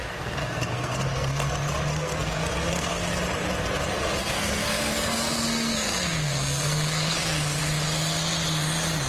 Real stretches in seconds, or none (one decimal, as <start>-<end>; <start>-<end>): 1.5-1.9; 3.2-4.2; 7.6-9.1